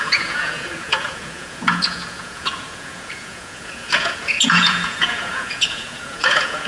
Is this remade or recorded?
remade